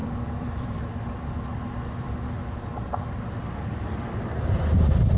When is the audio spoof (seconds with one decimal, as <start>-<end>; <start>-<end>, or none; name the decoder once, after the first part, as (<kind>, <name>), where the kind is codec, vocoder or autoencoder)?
0.0-1.0 (vocoder, BigVGAN v2)